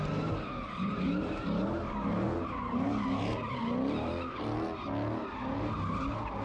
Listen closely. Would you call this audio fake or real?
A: real